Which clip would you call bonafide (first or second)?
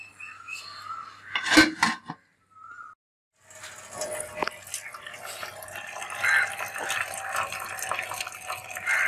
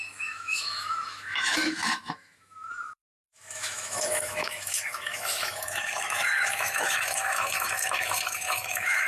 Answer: first